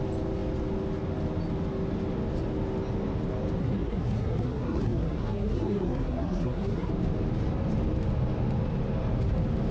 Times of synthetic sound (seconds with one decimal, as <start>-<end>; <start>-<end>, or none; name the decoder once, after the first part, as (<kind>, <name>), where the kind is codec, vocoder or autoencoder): 3.6-6.9 (codec, SNAC)